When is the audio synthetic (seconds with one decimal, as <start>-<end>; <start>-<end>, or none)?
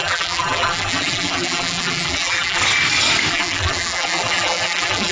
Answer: 0.0-2.6; 3.3-5.1